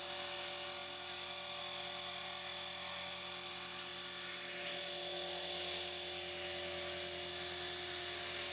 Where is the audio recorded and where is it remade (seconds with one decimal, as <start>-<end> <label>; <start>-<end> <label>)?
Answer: 0.0-8.5 recorded